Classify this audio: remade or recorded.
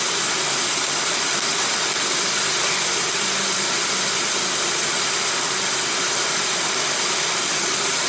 recorded